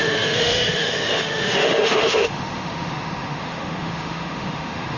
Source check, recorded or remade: remade